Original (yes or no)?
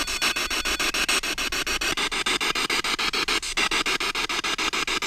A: yes